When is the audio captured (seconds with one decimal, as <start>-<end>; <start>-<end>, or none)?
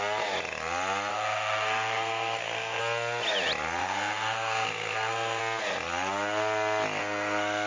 0.0-1.1; 2.8-3.8; 5.4-7.0